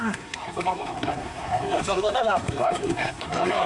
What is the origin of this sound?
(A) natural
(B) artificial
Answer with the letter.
B